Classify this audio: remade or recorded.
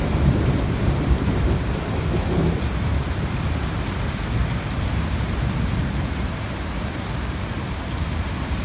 remade